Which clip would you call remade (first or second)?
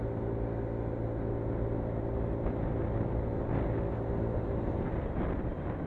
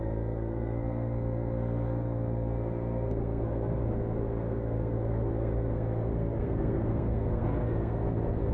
second